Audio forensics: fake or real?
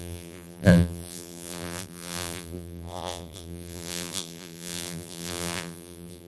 fake